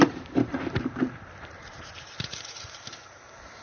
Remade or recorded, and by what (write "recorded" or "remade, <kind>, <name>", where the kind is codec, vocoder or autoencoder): remade, vocoder, BigVGAN v2